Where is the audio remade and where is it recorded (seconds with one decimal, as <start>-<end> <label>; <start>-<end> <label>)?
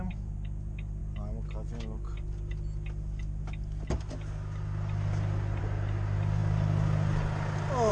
0.0-7.9 recorded